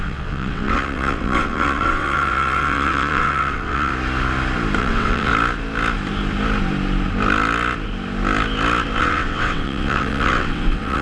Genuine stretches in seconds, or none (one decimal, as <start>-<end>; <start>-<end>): 3.9-4.8; 5.3-9.0